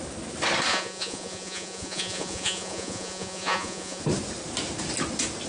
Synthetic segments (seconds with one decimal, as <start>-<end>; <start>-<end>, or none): 0.7-4.0